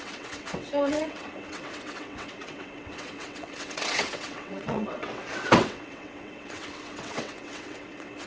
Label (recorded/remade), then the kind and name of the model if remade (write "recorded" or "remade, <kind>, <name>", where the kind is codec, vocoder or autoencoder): remade, vocoder, WaveNeXt